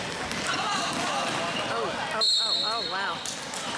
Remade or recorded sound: recorded